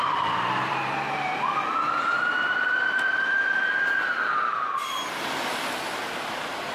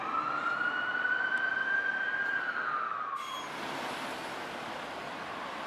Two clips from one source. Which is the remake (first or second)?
first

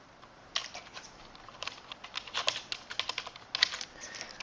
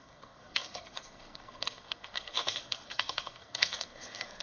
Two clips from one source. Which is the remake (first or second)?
second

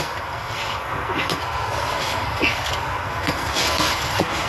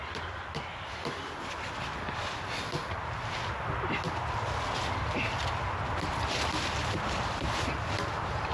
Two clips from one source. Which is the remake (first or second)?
first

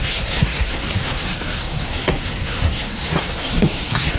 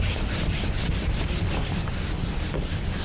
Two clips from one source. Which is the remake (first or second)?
first